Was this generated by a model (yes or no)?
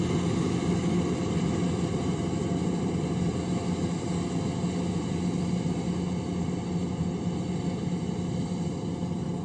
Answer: no